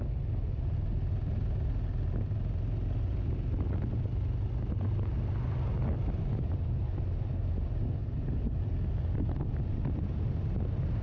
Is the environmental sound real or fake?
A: real